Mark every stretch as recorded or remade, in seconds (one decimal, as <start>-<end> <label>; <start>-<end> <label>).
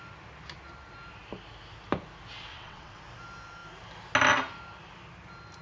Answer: 0.0-2.5 recorded; 2.5-3.0 remade; 3.0-5.6 recorded